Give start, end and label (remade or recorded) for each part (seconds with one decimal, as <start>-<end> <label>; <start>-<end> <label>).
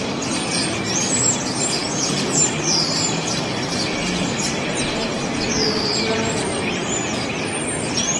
0.0-8.2 recorded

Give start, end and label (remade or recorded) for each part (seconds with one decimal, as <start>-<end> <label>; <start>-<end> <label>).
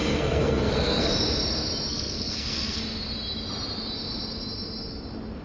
0.0-1.1 remade; 1.1-1.9 recorded; 1.9-2.8 remade; 2.8-5.4 recorded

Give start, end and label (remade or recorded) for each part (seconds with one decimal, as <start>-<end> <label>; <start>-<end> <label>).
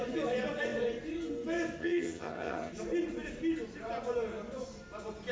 0.0-1.8 recorded; 1.8-2.7 remade; 2.7-5.3 recorded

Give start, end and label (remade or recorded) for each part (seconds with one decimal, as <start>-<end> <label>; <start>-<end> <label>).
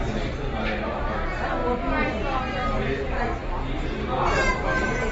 0.0-5.1 recorded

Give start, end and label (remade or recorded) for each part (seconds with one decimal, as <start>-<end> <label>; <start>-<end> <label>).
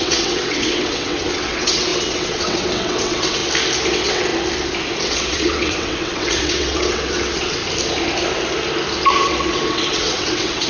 0.0-3.4 remade; 3.4-3.9 recorded; 3.9-4.3 remade; 4.3-5.0 recorded; 5.0-7.6 remade; 7.6-9.2 recorded; 9.2-10.7 remade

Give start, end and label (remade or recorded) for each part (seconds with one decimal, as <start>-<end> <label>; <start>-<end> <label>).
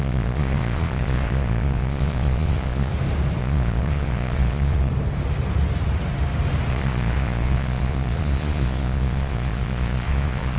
0.0-2.9 remade; 2.9-3.4 recorded; 3.4-4.9 remade; 4.9-6.7 recorded; 6.7-10.6 remade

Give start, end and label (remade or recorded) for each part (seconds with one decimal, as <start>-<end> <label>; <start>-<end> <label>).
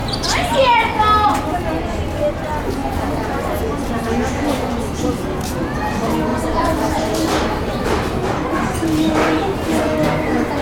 0.0-1.0 remade; 1.0-6.3 recorded; 6.3-9.4 remade; 9.4-10.6 recorded